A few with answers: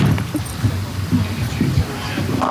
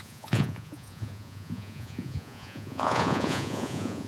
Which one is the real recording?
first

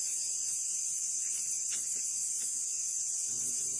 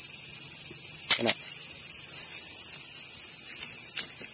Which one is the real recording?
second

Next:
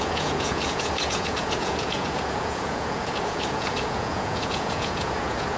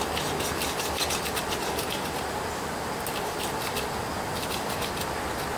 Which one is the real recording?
second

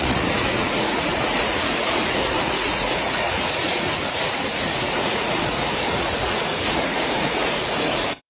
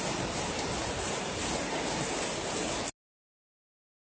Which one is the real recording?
second